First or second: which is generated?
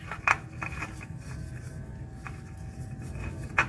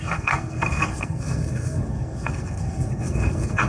second